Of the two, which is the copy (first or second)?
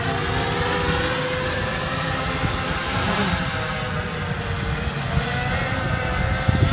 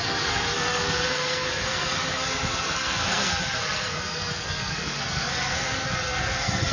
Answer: second